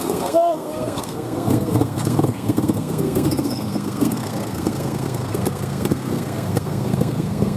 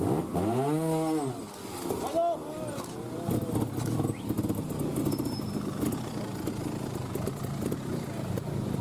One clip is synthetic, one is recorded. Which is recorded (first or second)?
second